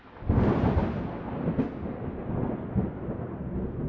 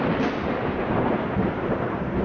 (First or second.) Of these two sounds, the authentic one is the first